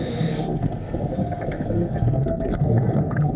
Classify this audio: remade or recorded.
remade